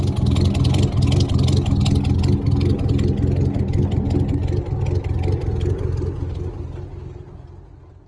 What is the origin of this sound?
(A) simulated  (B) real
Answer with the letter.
B